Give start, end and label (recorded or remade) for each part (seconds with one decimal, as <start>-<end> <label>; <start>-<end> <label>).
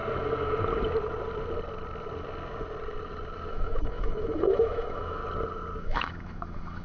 0.0-3.5 recorded; 3.5-5.2 remade; 5.2-5.8 recorded; 5.8-6.8 remade